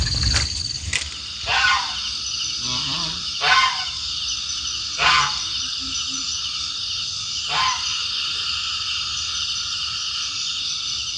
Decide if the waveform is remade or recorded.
recorded